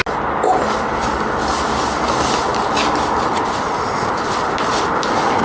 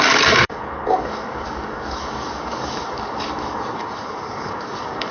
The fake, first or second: second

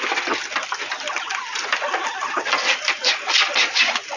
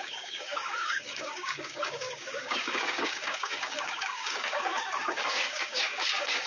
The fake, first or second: second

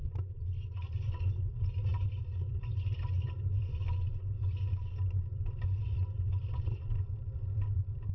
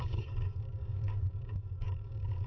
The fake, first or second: second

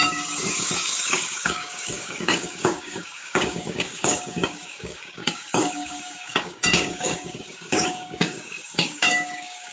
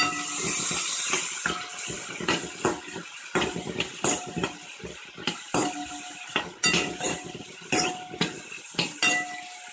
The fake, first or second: first